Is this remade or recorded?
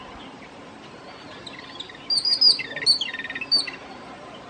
recorded